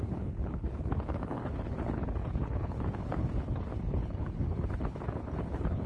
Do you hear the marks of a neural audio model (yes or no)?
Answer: yes